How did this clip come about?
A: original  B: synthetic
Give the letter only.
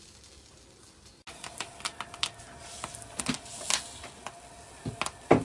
A